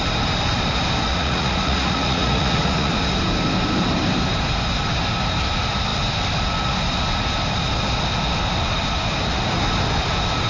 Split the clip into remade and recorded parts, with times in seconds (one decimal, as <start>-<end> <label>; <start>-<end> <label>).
0.0-1.1 recorded; 1.1-2.9 remade; 2.9-10.5 recorded